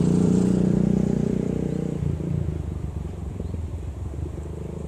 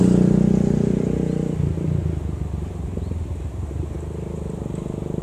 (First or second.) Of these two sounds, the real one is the second